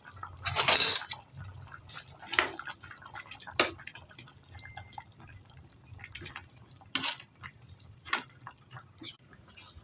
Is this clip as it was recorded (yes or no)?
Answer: yes